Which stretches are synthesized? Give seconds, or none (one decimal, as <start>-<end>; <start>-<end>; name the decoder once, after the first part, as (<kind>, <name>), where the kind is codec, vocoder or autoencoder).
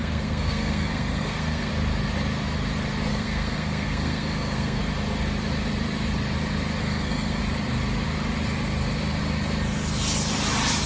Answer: 0.0-1.7 (codec, SNAC); 3.1-4.8; 6.8-7.4